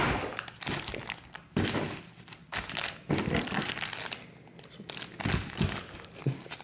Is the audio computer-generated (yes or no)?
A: no